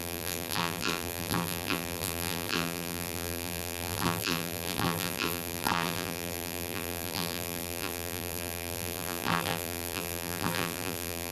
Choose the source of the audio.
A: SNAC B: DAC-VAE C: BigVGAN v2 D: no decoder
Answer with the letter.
C